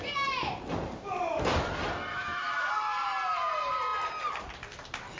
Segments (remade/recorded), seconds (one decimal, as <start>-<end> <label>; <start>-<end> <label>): 0.0-2.1 recorded; 2.1-2.7 remade; 2.7-5.2 recorded